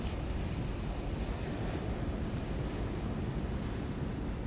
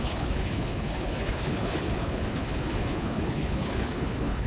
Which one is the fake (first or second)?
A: second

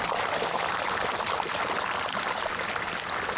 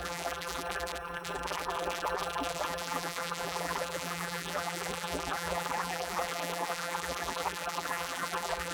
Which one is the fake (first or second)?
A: second